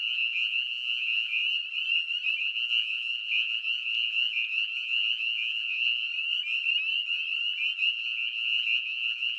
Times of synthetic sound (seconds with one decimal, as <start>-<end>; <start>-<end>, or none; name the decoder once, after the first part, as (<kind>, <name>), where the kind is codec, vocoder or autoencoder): 0.0-1.4 (vocoder, Vocos); 2.4-6.1; 7.9-9.4